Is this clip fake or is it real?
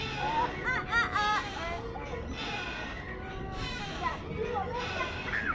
real